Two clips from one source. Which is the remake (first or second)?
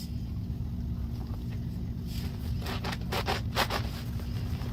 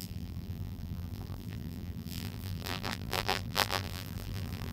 second